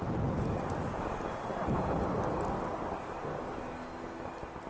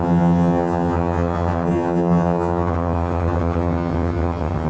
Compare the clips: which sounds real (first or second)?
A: first